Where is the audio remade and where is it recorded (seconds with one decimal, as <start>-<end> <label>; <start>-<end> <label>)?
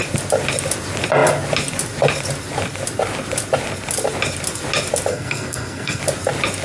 0.0-5.1 recorded; 5.1-6.0 remade; 6.0-6.6 recorded